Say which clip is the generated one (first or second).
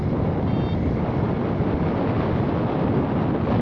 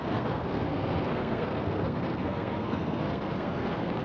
second